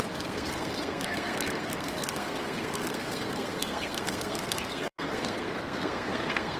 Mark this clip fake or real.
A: fake